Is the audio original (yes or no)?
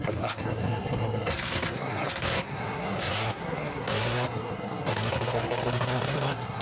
no